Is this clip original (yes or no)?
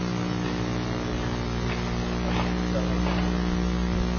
yes